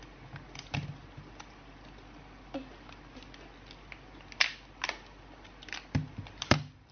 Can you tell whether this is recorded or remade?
recorded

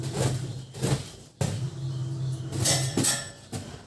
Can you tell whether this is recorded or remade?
recorded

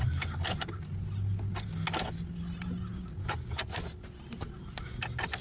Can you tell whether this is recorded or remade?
recorded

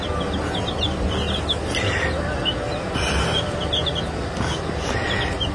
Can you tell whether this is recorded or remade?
recorded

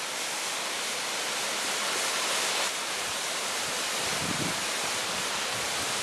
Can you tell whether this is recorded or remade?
recorded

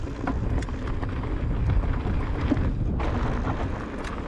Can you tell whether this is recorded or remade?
recorded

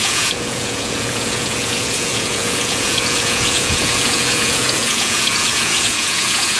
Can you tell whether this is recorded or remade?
remade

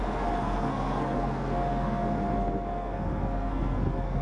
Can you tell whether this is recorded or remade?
remade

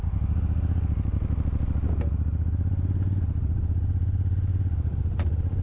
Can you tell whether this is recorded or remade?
recorded